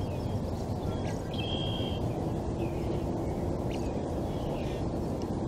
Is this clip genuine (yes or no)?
yes